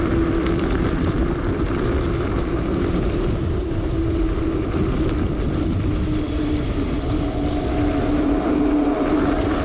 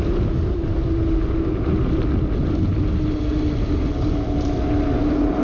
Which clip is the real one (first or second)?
second